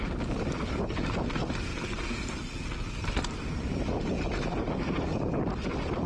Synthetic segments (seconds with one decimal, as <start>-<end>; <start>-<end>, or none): none